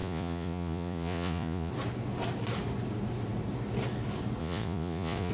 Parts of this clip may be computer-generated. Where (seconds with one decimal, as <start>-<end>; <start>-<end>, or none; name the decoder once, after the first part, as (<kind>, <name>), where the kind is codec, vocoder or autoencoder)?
0.0-1.7 (vocoder, Vocos); 4.4-5.3